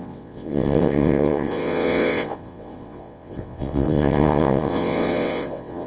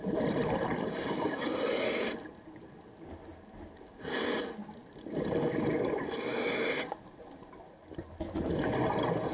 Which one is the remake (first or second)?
first